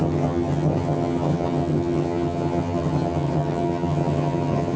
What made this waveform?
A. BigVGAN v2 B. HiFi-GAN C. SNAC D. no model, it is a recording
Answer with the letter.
B